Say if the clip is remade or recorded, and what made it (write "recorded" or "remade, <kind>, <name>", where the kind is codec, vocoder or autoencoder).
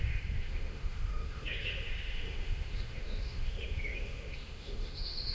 remade, autoencoder, DAC-VAE